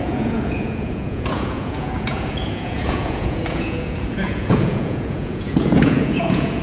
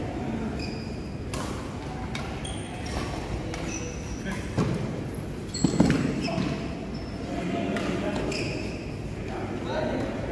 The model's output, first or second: first